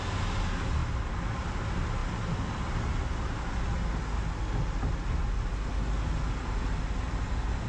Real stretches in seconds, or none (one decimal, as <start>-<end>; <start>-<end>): 0.0-7.7